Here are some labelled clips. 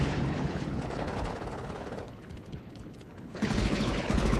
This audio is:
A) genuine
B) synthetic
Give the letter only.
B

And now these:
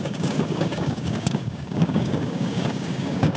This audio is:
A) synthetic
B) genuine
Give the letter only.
A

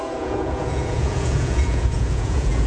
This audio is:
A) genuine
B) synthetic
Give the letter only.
B